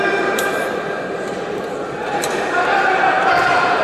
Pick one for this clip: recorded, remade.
remade